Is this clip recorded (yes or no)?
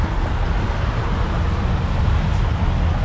yes